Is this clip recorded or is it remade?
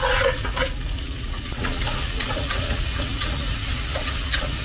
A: remade